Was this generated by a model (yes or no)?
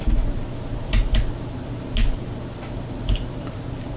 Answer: no